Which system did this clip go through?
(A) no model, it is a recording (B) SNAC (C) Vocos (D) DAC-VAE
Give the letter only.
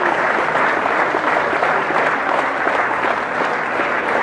A